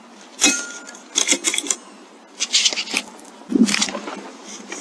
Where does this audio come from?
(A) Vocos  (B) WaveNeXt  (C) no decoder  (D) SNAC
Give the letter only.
C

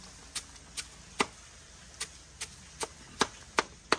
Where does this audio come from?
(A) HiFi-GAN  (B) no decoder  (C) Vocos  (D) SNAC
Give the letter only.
B